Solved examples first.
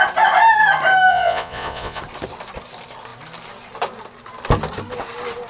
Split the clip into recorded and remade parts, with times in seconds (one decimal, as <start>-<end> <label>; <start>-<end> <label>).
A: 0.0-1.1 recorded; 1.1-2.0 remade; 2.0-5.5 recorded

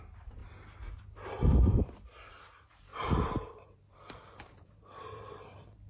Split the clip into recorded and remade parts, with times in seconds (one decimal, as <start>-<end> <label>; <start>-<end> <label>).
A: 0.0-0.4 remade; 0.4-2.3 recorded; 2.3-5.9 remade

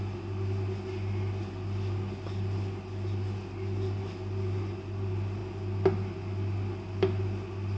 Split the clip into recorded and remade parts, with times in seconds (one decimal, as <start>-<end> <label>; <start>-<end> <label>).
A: 0.0-7.8 recorded

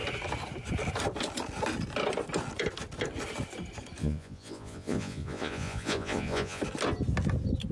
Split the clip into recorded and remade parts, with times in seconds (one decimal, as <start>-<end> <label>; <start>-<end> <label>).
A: 0.0-4.0 recorded; 4.0-6.6 remade; 6.6-7.7 recorded